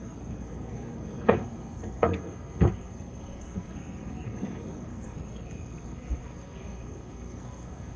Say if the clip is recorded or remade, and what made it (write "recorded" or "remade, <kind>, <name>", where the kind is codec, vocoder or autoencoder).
remade, codec, SNAC